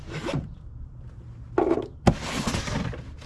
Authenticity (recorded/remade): recorded